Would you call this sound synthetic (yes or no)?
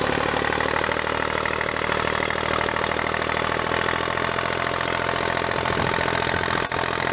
no